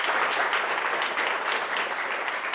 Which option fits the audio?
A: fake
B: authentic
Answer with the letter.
B